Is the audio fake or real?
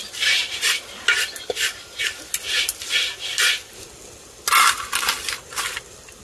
real